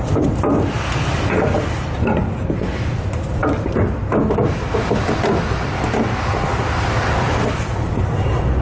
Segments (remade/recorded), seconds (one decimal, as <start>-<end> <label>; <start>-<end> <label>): 0.0-8.6 recorded